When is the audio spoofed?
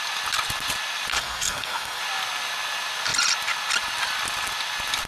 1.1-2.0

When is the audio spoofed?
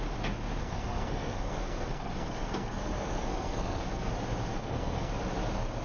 0.6-4.1; 4.5-5.1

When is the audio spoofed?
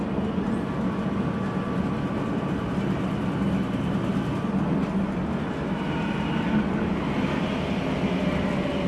none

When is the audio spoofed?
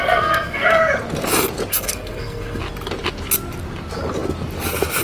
0.0-0.8; 1.7-2.6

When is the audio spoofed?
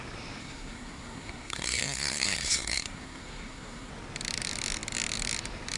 0.4-3.9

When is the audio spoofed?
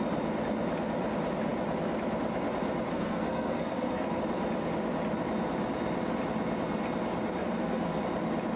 2.9-4.2; 7.4-8.0